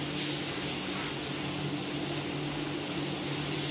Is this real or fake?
real